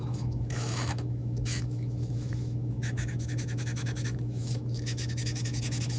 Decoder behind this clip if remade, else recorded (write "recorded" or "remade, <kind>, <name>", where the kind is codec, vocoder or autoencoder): remade, autoencoder, DAC-VAE